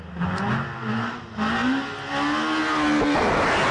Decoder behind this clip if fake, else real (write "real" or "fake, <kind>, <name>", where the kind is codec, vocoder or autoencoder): real